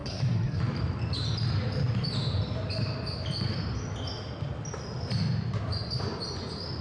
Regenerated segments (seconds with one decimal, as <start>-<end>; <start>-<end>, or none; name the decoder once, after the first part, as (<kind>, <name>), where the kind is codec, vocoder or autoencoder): 0.0-0.6 (codec, SNAC)